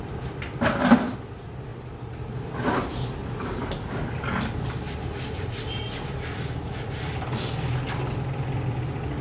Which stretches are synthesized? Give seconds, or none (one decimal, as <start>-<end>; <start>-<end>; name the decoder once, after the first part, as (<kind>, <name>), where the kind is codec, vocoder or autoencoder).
none